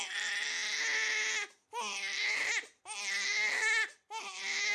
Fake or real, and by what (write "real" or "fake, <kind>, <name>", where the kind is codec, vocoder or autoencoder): real